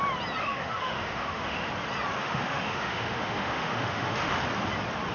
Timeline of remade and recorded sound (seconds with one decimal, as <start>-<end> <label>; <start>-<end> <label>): 0.0-0.4 recorded; 0.4-1.7 remade; 1.7-2.2 recorded; 2.2-4.3 remade; 4.3-5.1 recorded